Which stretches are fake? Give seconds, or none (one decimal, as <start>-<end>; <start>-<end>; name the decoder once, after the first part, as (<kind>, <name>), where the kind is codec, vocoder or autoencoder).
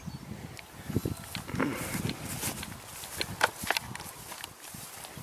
none